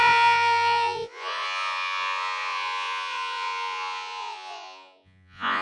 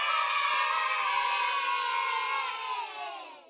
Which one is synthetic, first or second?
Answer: first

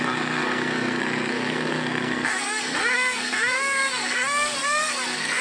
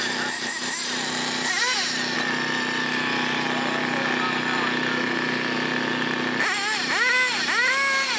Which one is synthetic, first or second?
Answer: first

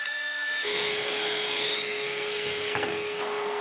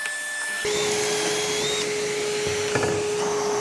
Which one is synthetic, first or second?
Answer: first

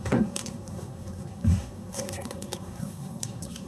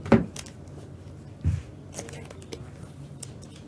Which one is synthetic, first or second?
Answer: first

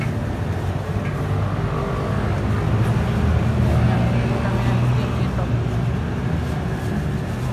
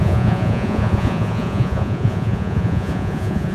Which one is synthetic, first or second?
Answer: second